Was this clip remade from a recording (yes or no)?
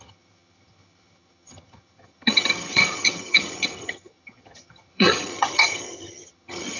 yes